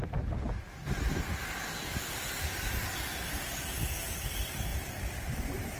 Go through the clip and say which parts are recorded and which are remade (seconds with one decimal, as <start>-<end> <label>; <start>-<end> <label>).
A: 0.0-5.8 recorded